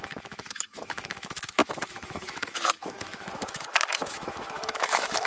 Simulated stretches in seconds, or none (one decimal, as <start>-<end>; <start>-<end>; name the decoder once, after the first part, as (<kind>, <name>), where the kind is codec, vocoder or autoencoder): 0.0-5.3 (autoencoder, DAC-VAE)